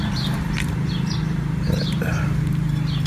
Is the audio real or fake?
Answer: fake